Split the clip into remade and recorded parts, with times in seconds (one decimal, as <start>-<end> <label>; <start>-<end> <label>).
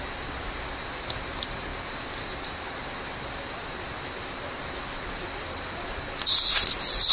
0.0-7.1 recorded